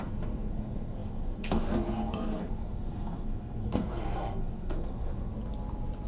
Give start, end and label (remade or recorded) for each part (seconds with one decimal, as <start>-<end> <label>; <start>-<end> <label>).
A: 0.0-5.3 remade; 5.3-6.1 recorded